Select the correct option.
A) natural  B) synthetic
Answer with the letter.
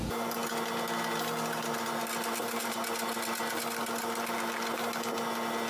A